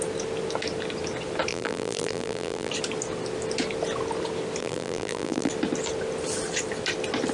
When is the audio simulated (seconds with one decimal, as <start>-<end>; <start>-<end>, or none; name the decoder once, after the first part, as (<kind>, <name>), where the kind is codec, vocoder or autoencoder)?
1.5-2.7 (vocoder, BigVGAN v2); 4.6-5.5

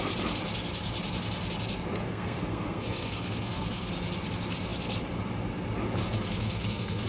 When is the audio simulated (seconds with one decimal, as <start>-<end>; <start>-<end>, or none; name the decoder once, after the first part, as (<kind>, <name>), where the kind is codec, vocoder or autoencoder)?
2.0-3.9 (codec, SNAC); 6.0-7.1